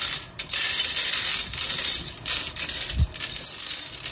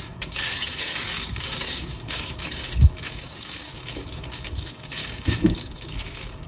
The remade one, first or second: second